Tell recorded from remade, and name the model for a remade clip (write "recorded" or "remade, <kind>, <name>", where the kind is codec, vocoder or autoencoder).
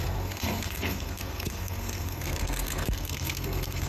remade, codec, SNAC